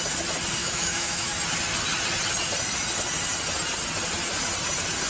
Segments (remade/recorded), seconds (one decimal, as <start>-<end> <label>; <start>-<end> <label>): 0.0-0.6 recorded; 0.6-1.3 remade; 1.3-5.1 recorded